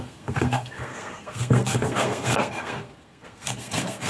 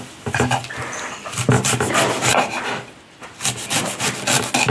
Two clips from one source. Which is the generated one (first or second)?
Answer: first